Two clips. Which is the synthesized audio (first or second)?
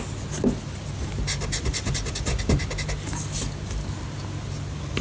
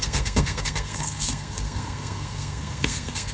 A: second